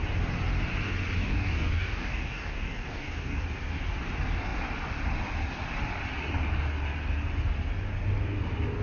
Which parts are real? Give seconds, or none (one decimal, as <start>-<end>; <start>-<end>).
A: 0.0-1.2; 3.4-8.8